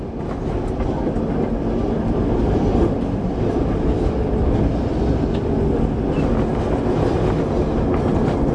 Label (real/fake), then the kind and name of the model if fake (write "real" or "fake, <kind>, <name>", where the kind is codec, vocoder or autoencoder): real